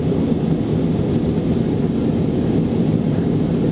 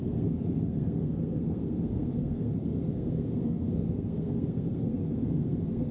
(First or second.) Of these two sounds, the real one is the first